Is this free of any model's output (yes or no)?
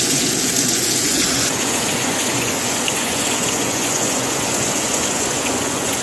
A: no